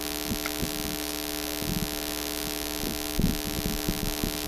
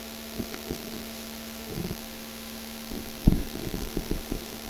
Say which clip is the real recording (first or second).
first